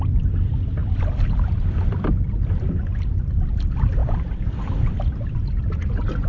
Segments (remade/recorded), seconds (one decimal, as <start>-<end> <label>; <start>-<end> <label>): 0.0-0.8 recorded; 0.8-2.9 remade; 2.9-4.0 recorded; 4.0-4.9 remade; 4.9-6.3 recorded